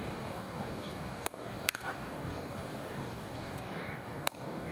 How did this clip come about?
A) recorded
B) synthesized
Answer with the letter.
B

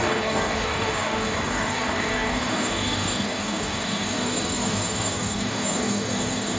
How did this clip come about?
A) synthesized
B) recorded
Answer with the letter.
A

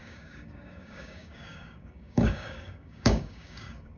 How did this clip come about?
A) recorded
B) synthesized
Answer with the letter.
B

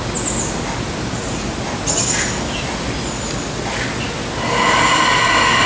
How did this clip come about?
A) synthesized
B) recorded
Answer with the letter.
B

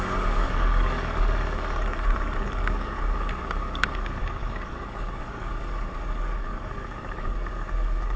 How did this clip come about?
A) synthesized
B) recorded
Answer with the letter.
A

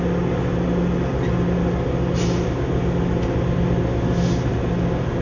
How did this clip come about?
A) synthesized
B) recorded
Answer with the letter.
B